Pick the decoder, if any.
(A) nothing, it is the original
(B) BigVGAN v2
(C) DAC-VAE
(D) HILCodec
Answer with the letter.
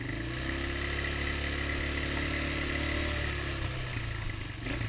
A